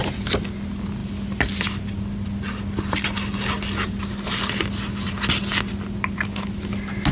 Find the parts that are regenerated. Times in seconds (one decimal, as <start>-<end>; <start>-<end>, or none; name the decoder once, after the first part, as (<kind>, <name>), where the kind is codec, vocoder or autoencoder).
none